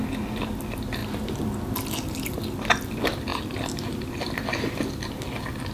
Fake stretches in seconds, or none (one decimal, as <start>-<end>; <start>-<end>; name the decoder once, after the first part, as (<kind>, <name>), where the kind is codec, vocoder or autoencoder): none